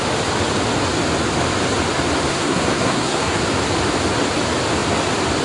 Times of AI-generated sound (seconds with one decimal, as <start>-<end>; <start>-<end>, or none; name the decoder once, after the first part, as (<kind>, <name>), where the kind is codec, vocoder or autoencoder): 2.3-3.4 (codec, SNAC)